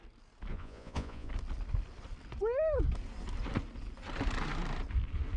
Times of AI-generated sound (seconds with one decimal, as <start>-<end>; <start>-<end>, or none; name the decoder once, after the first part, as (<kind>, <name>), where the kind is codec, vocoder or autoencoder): 0.5-1.3 (vocoder, Vocos)